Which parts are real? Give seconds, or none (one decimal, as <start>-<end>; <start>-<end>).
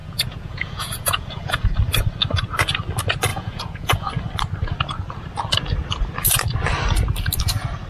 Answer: 1.7-3.3; 4.1-7.9